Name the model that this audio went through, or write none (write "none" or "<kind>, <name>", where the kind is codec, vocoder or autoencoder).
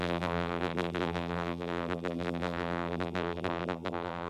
vocoder, BigVGAN v2